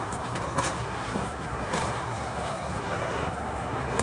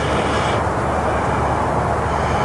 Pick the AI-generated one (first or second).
first